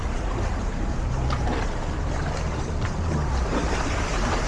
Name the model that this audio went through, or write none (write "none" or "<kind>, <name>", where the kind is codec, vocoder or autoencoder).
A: vocoder, BigVGAN v2